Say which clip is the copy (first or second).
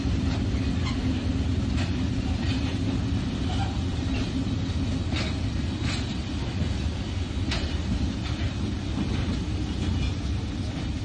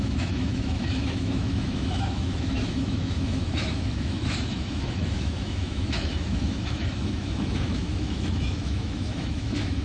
second